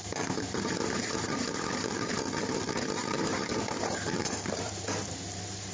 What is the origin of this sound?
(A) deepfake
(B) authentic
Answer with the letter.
A